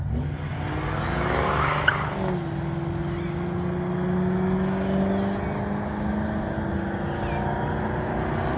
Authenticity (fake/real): real